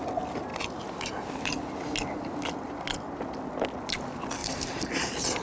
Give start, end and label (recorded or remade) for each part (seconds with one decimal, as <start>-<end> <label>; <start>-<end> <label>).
0.0-4.4 recorded; 4.4-5.4 remade